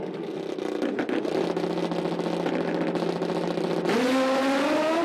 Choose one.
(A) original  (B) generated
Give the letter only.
A